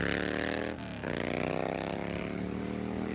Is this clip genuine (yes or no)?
yes